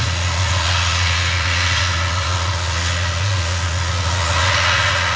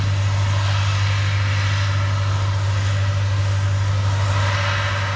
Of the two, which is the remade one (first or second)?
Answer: first